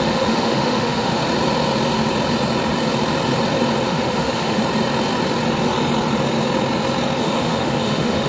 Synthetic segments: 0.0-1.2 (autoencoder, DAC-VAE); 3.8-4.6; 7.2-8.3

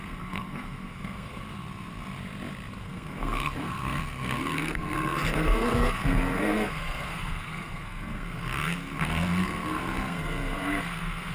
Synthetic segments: 0.0-1.4 (codec, SNAC); 2.8-11.3

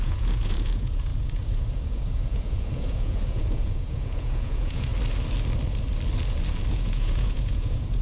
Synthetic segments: 0.0-4.9 (vocoder, Vocos); 6.7-8.0

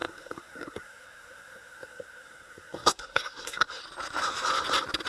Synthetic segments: 0.0-3.8 (codec, SNAC)

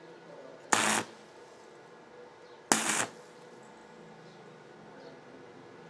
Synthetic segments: none